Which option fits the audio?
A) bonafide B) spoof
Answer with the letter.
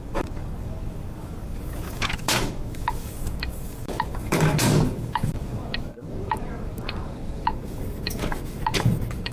B